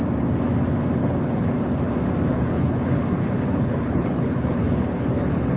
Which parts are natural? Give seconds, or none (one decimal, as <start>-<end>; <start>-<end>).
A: 0.0-1.0; 1.9-2.3